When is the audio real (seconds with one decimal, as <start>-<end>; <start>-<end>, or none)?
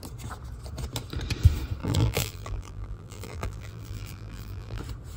0.0-1.8; 4.8-5.2